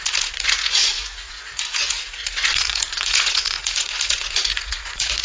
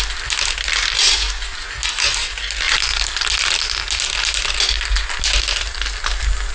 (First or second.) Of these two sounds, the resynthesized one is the first